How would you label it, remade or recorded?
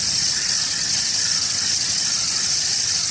recorded